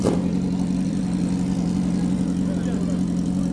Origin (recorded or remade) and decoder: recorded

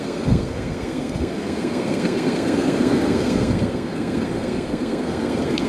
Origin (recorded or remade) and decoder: remade, codec, SNAC